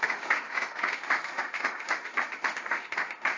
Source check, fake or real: fake